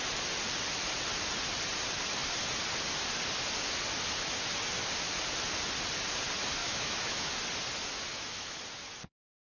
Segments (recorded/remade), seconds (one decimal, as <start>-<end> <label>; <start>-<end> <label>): 0.0-6.6 recorded; 6.6-7.3 remade; 7.3-8.1 recorded; 8.1-8.6 remade; 8.6-9.4 recorded